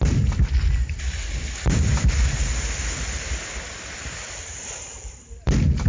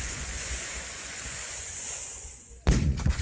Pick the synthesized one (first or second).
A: second